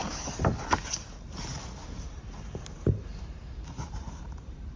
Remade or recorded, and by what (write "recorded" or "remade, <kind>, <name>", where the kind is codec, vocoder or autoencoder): remade, vocoder, BigVGAN v2